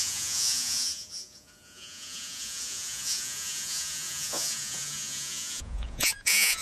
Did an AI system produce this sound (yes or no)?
yes